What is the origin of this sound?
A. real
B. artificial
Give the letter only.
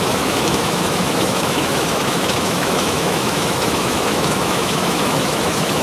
B